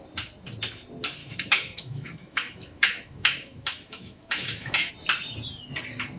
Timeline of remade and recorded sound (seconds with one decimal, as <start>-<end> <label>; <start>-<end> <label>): 0.0-1.2 recorded; 1.2-4.9 remade; 4.9-6.2 recorded